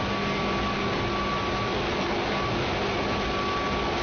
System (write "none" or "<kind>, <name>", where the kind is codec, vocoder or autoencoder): none